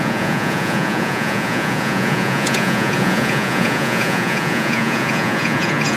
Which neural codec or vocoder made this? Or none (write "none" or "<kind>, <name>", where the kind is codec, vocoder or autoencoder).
vocoder, Vocos